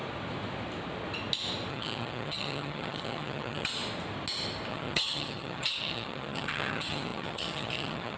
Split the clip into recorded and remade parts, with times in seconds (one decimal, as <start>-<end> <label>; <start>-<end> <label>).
0.0-1.7 recorded; 1.7-3.7 remade; 3.7-4.7 recorded; 4.7-8.2 remade